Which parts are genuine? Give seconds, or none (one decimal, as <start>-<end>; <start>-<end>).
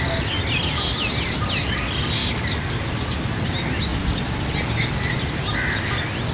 0.0-6.3